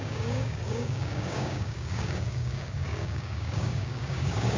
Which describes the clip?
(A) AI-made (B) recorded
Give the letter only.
A